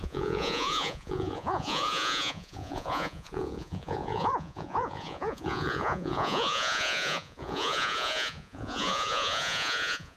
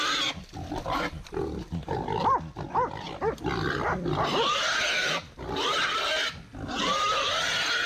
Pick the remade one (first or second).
first